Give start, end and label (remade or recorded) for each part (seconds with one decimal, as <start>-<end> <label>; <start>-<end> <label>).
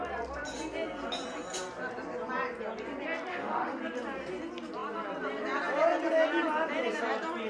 0.0-3.3 recorded; 3.3-3.8 remade; 3.8-7.5 recorded